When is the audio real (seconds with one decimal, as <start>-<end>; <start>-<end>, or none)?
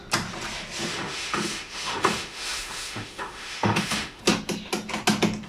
0.0-0.9; 4.2-5.5